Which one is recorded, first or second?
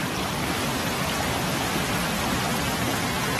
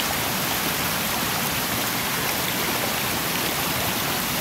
first